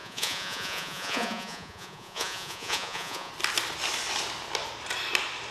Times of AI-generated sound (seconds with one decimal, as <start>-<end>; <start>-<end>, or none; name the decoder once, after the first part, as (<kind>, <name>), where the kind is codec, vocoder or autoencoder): 0.0-3.3 (vocoder, Vocos)